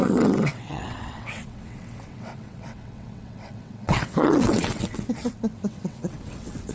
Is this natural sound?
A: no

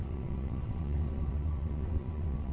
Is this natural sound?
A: no